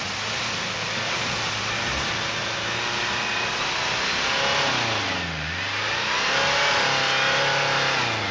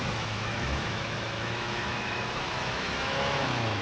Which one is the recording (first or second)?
first